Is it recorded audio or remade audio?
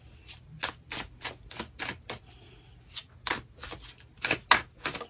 recorded